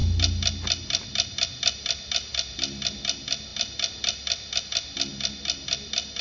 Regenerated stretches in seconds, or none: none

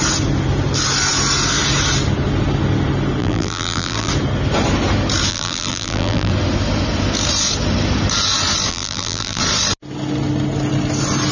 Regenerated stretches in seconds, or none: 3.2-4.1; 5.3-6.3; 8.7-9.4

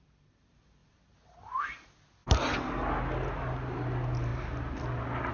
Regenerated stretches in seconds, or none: none